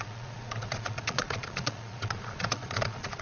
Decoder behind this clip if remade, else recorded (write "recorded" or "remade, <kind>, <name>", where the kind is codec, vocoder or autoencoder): remade, vocoder, Vocos